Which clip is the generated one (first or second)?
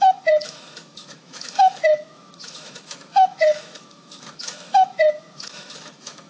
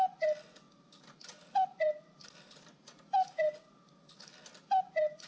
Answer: first